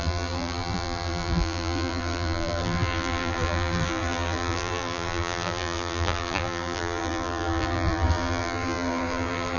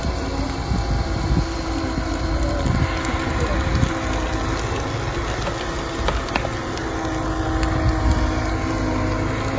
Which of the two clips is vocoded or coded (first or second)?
first